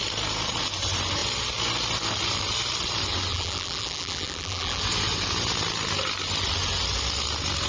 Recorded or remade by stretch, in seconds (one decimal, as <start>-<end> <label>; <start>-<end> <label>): 0.0-3.3 recorded; 3.3-4.8 remade; 4.8-7.7 recorded